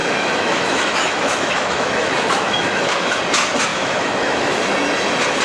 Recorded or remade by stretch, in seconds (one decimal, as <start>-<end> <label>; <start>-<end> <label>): 0.0-3.2 remade; 3.2-3.7 recorded; 3.7-4.6 remade; 4.6-5.4 recorded